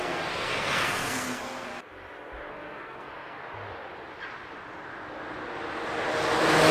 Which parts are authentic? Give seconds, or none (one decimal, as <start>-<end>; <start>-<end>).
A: 1.7-2.5; 3.4-6.7